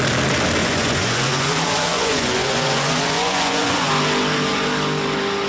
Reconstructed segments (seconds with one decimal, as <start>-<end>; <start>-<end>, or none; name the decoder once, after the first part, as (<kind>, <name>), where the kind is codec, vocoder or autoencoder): 0.6-3.9 (vocoder, Vocos)